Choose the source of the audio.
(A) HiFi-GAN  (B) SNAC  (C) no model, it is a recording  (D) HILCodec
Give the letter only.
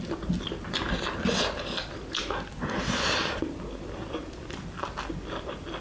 C